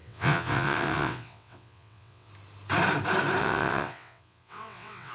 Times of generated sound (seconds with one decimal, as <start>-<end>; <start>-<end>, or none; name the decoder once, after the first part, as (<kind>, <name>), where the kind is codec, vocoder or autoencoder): 0.0-2.3 (vocoder, WaveNeXt); 3.4-5.1